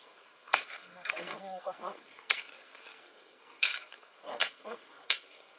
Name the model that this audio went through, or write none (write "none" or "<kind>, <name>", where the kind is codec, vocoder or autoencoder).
codec, SNAC